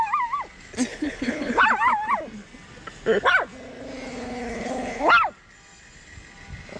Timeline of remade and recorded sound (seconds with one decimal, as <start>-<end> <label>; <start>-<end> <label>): 0.0-0.9 recorded; 0.9-1.6 remade; 1.6-4.1 recorded; 4.1-5.1 remade; 5.1-6.8 recorded